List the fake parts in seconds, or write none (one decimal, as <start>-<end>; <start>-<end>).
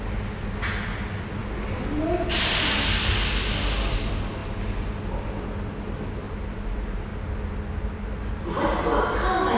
none